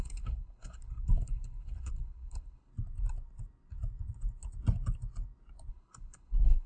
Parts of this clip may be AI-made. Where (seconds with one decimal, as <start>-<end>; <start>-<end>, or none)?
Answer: 0.0-2.7; 5.7-6.7